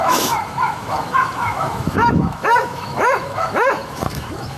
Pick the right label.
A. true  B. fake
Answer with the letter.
B